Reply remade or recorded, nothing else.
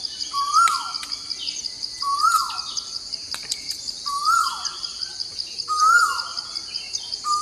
recorded